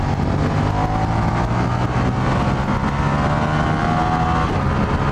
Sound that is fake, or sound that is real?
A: real